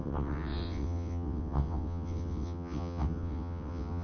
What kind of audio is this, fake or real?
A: fake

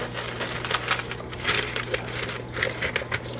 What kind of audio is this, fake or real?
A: real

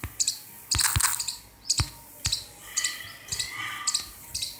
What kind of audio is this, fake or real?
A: real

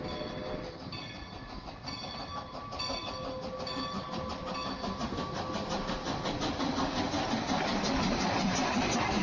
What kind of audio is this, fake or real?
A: real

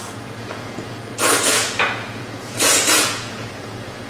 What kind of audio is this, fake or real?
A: fake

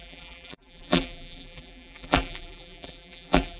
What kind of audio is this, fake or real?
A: fake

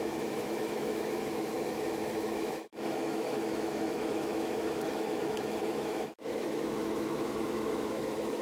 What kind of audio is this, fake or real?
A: fake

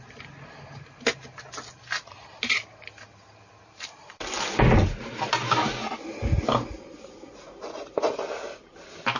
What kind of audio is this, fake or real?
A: real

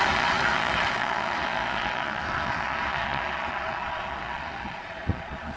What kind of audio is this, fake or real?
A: fake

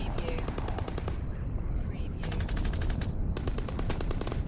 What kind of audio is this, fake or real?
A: fake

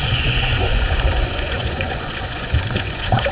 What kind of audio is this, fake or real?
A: fake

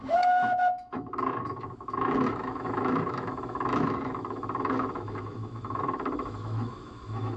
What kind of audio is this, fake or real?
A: fake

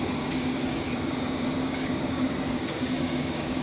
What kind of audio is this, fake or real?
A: fake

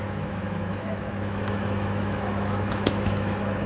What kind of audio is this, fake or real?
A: fake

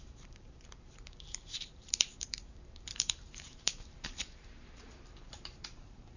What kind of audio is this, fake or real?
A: fake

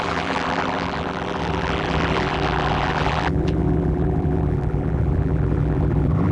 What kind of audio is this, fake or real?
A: fake